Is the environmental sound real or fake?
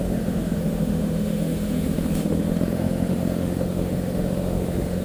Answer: fake